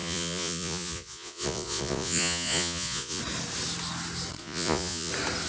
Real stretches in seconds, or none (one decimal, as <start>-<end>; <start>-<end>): 3.2-4.4; 5.1-5.5